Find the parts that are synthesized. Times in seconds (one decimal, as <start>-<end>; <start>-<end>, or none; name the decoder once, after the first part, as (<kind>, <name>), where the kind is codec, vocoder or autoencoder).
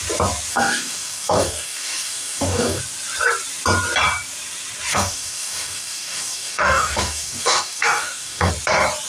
0.5-2.8 (codec, DAC); 4.9-8.5